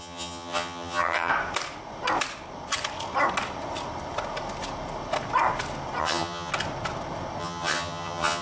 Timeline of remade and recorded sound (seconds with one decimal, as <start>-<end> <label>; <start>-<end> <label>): 0.0-1.3 remade; 1.3-6.0 recorded; 6.0-6.5 remade; 6.5-7.4 recorded; 7.4-8.4 remade